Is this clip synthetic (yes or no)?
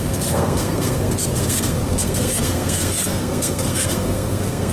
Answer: yes